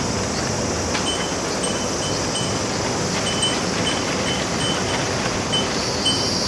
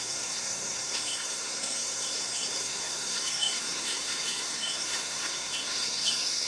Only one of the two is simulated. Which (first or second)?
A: second